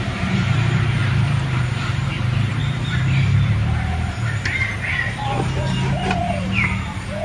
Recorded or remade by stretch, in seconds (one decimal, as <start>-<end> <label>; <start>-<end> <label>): 0.0-7.2 remade